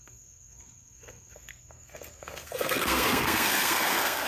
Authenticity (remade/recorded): remade